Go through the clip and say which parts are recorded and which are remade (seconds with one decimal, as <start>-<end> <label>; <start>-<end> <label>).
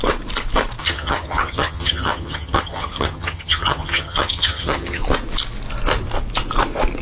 0.0-0.8 recorded; 0.8-5.0 remade; 5.0-7.0 recorded